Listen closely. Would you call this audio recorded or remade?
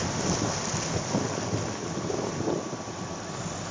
recorded